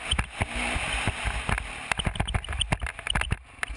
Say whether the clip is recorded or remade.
recorded